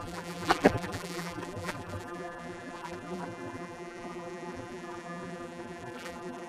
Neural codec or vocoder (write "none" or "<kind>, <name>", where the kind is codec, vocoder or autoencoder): vocoder, BigVGAN v2